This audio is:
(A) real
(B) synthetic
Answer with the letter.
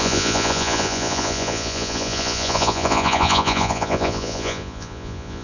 B